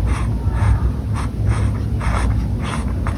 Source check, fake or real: real